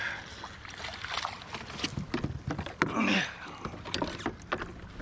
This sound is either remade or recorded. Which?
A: recorded